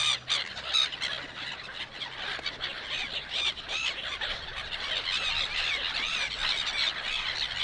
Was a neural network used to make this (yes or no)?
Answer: no